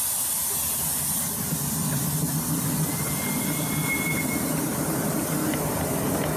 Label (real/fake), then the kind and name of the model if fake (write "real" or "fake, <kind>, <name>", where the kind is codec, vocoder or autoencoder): real